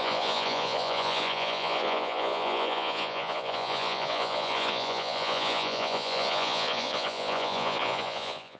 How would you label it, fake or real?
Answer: fake